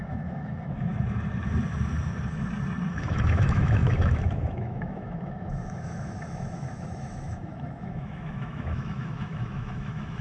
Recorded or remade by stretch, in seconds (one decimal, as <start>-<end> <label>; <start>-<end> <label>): 0.0-0.9 remade; 0.9-2.9 recorded; 2.9-10.2 remade